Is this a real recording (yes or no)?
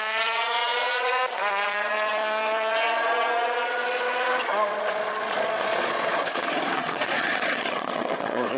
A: no